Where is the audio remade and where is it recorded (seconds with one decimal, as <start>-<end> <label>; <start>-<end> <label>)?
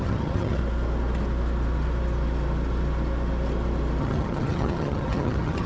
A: 0.0-0.6 remade; 0.6-4.0 recorded; 4.0-5.7 remade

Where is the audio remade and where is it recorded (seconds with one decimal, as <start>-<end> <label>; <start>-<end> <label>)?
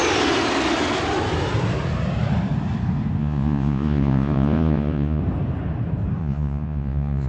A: 0.0-3.2 recorded; 3.2-5.2 remade; 5.2-6.2 recorded; 6.2-7.3 remade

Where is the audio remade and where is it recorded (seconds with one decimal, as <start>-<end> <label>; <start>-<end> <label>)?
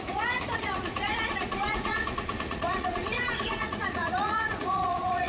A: 0.0-5.3 remade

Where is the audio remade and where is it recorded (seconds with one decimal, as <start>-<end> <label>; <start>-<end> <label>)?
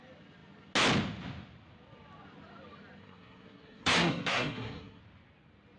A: 0.0-3.0 recorded; 3.0-5.0 remade; 5.0-5.8 recorded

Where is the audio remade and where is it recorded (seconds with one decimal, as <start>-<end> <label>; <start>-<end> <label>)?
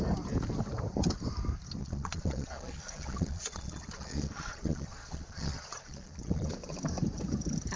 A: 0.0-1.8 recorded; 1.8-6.5 remade; 6.5-7.8 recorded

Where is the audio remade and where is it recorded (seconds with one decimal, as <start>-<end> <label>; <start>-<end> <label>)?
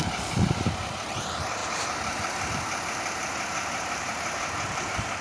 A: 0.0-5.2 remade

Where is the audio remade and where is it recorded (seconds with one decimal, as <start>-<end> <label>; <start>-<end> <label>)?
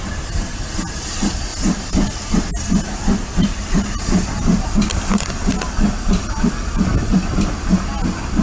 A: 0.0-8.4 recorded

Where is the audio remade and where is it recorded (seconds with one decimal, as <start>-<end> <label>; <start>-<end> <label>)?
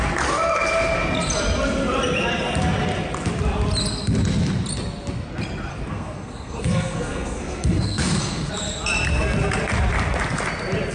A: 0.0-5.7 recorded; 5.7-8.5 remade; 8.5-10.9 recorded